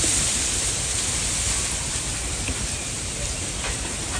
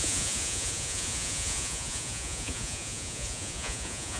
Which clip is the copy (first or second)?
second